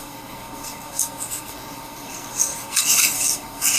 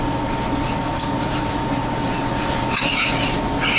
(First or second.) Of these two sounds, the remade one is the first